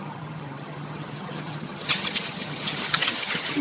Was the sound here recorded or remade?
remade